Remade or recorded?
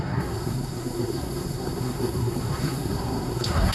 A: remade